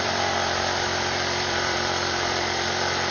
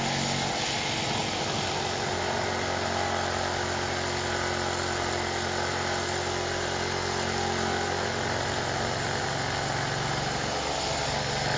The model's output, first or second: first